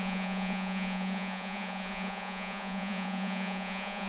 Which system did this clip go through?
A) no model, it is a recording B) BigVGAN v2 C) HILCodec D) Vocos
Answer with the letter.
D